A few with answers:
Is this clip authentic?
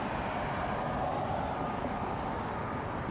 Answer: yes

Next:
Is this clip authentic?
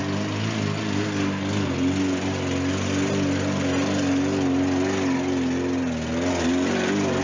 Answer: yes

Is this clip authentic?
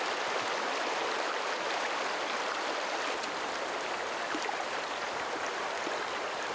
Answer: yes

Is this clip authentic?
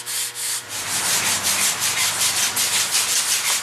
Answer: yes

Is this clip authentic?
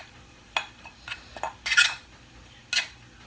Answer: yes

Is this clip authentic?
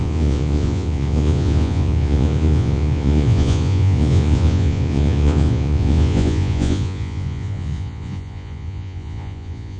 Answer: no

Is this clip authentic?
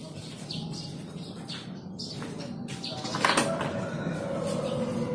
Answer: yes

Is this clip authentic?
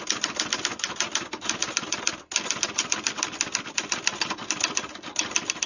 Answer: yes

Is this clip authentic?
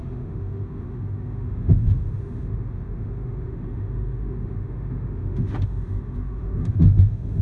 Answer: no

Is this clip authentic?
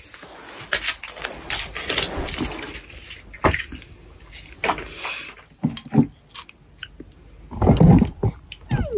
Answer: yes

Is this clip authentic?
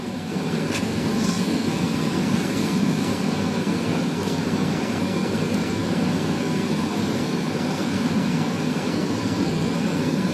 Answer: no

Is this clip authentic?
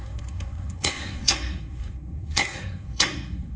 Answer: no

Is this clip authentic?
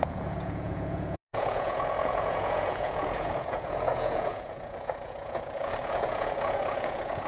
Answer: no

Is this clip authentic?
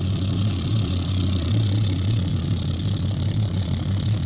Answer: no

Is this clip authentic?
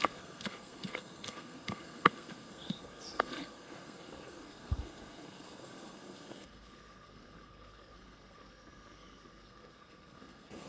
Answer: no